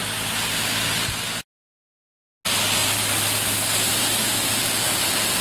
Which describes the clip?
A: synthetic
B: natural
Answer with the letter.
B